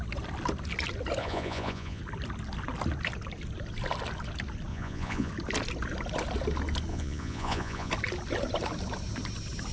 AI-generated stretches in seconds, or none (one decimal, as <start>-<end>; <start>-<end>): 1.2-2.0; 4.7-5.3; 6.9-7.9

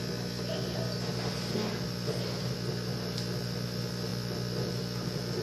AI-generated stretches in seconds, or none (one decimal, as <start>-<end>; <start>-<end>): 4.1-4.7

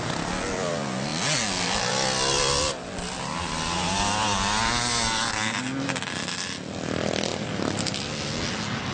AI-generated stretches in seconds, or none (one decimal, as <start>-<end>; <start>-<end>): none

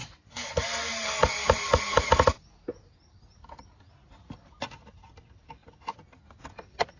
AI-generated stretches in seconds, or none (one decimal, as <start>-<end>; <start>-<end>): none

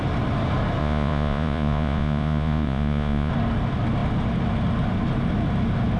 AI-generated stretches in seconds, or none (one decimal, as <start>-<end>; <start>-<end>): 0.8-3.3

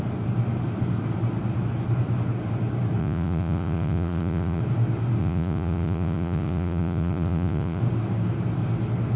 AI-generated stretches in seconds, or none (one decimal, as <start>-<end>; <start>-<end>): 3.0-4.6; 5.2-7.8